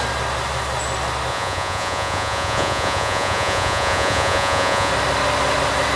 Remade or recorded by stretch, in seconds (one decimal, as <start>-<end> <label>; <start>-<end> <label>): 0.0-1.3 recorded; 1.3-4.9 remade; 4.9-6.0 recorded